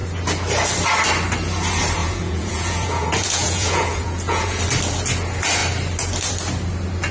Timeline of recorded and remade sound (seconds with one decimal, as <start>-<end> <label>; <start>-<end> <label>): 0.0-2.0 recorded; 2.0-4.6 remade; 4.6-7.1 recorded